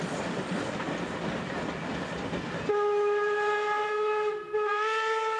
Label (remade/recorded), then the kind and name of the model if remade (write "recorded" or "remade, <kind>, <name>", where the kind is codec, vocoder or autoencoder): recorded